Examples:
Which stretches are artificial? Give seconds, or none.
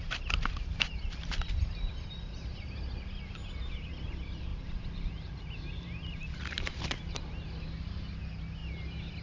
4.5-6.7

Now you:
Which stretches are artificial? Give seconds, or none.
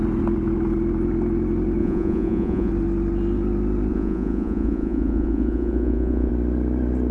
1.8-2.7; 3.9-6.3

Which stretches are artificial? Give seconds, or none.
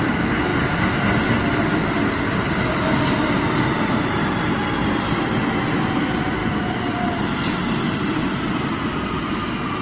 none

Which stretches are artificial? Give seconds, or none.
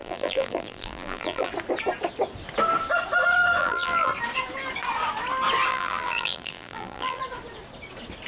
0.0-1.5; 3.6-4.1; 5.7-7.2